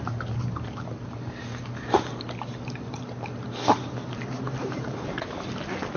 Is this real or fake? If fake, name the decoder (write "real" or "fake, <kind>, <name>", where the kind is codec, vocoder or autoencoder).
real